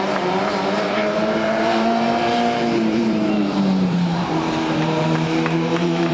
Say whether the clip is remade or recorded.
remade